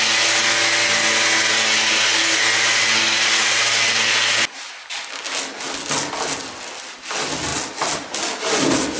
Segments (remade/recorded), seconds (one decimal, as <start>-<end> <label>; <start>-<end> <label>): 0.0-9.0 recorded